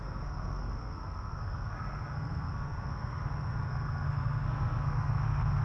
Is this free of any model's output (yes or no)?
no